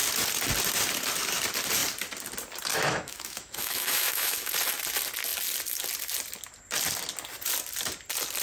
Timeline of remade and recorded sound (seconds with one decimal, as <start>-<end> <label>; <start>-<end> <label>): 0.0-2.7 recorded; 2.7-4.5 remade; 4.5-8.4 recorded